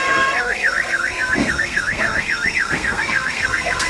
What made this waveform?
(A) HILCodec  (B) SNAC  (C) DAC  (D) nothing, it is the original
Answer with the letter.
B